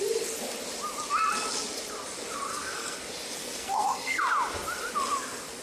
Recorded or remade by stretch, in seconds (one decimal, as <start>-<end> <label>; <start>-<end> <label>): 0.0-2.5 recorded; 2.5-3.0 remade; 3.0-3.4 recorded; 3.4-4.2 remade; 4.2-5.6 recorded